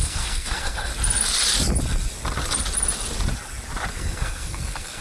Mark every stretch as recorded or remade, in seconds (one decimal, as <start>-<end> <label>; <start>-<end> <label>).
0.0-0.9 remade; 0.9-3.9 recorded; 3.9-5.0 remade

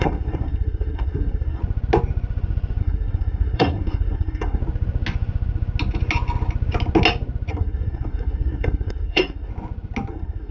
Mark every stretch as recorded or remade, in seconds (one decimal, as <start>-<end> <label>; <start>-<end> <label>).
0.0-1.6 remade; 1.6-2.8 recorded; 2.8-4.6 remade; 4.6-7.5 recorded; 7.5-9.5 remade; 9.5-10.1 recorded; 10.1-10.5 remade

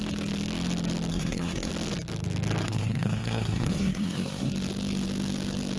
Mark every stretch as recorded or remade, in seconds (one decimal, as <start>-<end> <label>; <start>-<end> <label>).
0.0-1.1 recorded; 1.1-1.7 remade; 1.7-2.6 recorded; 2.6-4.5 remade; 4.5-5.8 recorded

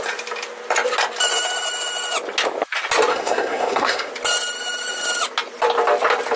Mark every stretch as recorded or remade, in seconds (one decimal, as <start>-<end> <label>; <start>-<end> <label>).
0.0-3.1 recorded; 3.1-4.1 remade; 4.1-6.4 recorded

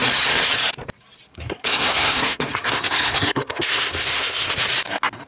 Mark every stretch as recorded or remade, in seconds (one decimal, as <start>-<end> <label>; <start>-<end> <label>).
0.0-1.3 recorded; 1.3-4.5 remade; 4.5-5.3 recorded